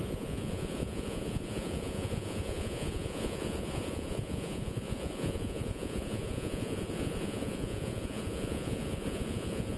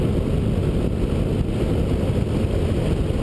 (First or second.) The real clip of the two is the second